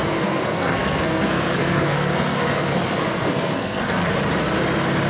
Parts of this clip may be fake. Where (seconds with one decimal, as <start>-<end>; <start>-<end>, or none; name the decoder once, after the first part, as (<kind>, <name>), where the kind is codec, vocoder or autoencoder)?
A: 0.0-4.0 (codec, SNAC)